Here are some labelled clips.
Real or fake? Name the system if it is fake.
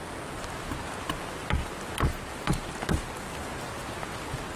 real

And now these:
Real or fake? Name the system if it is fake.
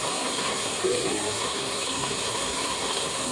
fake, codec, SNAC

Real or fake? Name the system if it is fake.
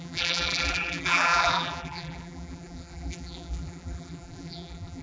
fake, vocoder, BigVGAN v2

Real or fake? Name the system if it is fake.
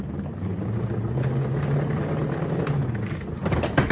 real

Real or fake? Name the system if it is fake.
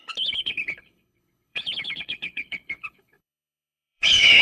fake, codec, HILCodec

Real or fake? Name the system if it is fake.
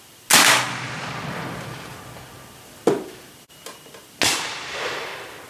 real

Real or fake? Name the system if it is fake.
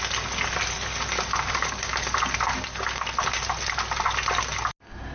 real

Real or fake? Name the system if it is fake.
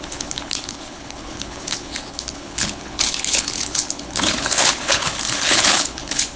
fake, codec, HILCodec